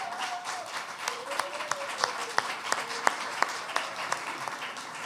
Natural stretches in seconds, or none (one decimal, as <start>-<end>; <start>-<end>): none